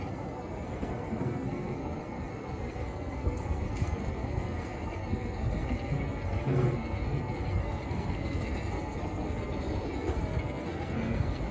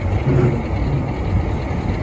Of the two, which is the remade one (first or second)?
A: first